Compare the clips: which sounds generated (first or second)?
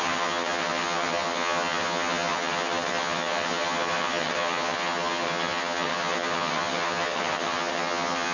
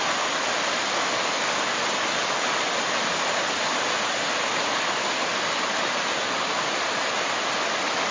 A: first